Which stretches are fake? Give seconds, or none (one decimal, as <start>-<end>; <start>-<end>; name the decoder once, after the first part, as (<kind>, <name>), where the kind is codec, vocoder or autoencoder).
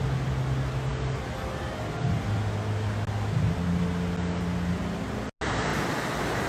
none